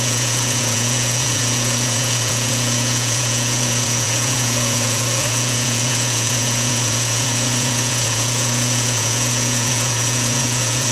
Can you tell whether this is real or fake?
fake